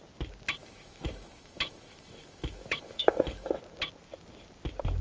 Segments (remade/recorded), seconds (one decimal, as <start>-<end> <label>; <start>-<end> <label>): 0.0-0.6 recorded; 0.6-3.6 remade; 3.6-5.0 recorded

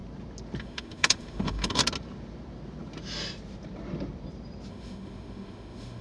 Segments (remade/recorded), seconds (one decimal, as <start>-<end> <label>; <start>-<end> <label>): 0.0-0.6 recorded; 0.6-1.8 remade; 1.8-4.7 recorded; 4.7-6.0 remade

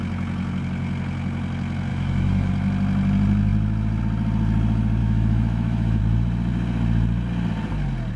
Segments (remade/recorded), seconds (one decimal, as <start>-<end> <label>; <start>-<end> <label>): 0.0-1.9 recorded; 1.9-2.5 remade; 2.5-5.0 recorded; 5.0-6.0 remade; 6.0-8.2 recorded

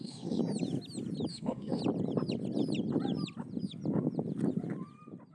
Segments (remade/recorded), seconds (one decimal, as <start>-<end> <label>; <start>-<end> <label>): 0.0-0.4 remade; 0.4-1.3 recorded; 1.3-1.8 remade; 1.8-5.3 recorded

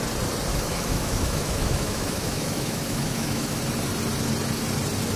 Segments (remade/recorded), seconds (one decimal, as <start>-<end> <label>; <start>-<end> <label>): 0.0-0.5 recorded; 0.5-3.6 remade; 3.6-5.2 recorded

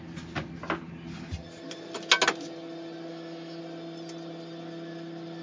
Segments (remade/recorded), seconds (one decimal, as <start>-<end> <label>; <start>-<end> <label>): 0.0-3.1 recorded; 3.1-3.6 remade; 3.6-5.4 recorded

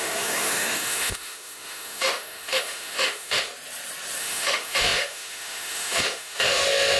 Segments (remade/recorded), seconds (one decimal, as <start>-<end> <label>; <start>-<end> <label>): 0.0-3.5 remade; 3.5-4.2 recorded; 4.2-7.0 remade